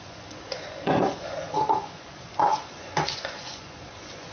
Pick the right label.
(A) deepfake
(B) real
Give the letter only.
A